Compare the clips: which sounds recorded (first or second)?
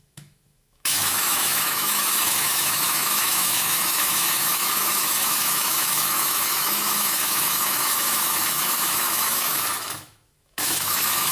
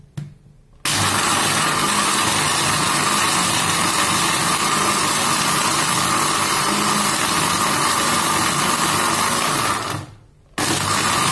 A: second